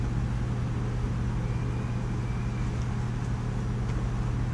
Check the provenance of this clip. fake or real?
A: real